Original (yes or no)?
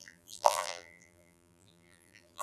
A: no